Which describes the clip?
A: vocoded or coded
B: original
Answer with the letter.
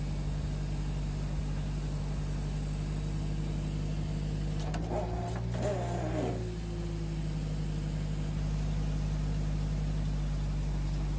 B